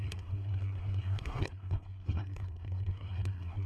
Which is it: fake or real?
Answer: fake